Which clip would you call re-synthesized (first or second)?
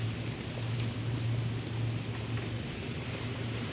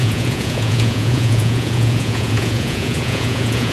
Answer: second